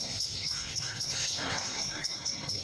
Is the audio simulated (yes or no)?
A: yes